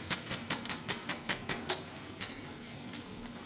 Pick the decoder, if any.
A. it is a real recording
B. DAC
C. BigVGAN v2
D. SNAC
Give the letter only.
D